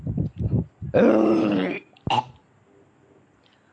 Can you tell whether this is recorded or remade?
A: recorded